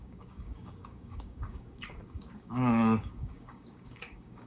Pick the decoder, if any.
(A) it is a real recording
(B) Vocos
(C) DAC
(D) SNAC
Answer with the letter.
C